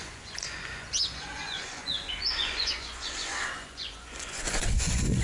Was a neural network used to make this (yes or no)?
yes